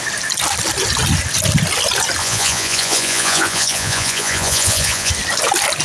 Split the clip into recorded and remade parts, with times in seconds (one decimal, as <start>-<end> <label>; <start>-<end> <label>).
0.0-2.2 recorded; 2.2-5.1 remade; 5.1-5.8 recorded